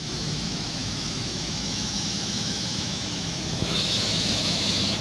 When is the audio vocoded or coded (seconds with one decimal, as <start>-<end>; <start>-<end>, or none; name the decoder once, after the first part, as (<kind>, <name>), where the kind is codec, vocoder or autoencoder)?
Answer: 0.0-5.0 (autoencoder, DAC-VAE)